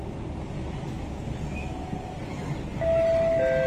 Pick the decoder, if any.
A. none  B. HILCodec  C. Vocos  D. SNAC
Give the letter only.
A